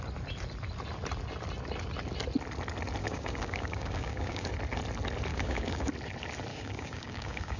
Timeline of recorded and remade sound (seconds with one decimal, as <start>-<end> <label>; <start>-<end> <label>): 0.0-3.0 recorded; 3.0-4.5 remade; 4.5-5.3 recorded; 5.3-5.9 remade; 5.9-6.5 recorded; 6.5-7.6 remade